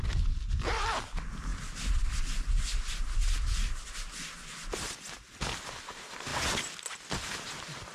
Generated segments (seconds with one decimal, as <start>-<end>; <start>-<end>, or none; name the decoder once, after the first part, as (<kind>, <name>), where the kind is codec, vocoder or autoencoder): none